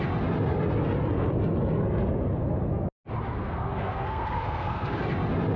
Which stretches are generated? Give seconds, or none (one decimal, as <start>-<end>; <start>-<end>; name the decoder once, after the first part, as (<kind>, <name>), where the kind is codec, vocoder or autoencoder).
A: 3.4-4.9 (codec, SNAC)